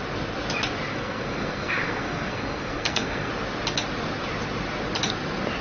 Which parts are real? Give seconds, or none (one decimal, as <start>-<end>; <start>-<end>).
0.0-0.9; 3.3-5.6